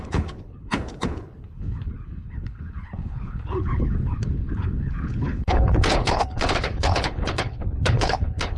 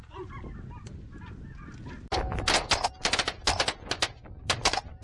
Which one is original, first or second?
second